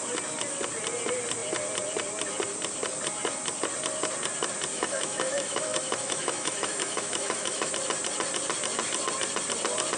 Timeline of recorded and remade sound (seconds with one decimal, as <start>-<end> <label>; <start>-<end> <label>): 0.0-4.7 recorded; 4.7-7.7 remade; 7.7-10.0 recorded